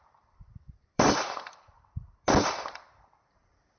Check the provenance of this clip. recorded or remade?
remade